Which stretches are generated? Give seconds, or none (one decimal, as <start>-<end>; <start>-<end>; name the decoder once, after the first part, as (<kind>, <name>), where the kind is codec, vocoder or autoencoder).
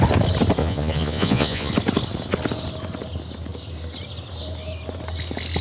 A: 0.6-1.7 (vocoder, Vocos)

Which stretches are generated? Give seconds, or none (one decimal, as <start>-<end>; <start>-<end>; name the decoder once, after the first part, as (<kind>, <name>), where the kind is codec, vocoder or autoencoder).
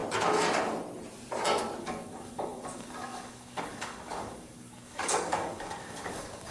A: 1.8-6.5 (codec, DAC)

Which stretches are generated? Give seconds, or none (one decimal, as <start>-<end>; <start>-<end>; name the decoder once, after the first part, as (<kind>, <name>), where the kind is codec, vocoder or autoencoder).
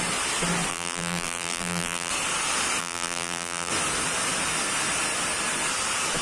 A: 0.7-2.1 (vocoder, BigVGAN v2); 2.8-3.7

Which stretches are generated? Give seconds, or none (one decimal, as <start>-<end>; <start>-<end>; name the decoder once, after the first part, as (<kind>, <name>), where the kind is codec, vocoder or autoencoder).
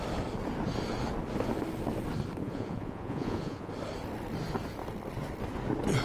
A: 2.4-3.7 (vocoder, Vocos)